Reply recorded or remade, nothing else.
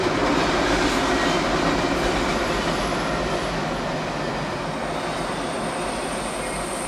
recorded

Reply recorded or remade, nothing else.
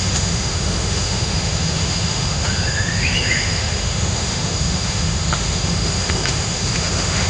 remade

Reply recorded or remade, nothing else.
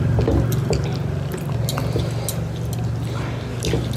recorded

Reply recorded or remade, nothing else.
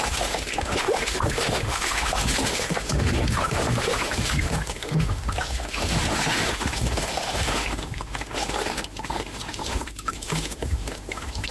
remade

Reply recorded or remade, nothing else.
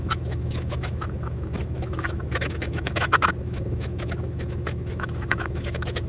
remade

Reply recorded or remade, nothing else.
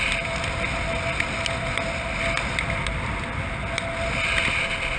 recorded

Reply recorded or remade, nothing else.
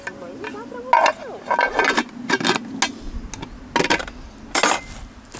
recorded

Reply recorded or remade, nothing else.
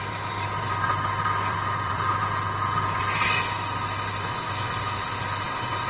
recorded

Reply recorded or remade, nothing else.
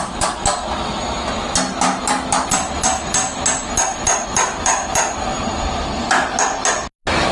recorded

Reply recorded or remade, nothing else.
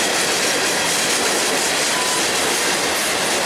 recorded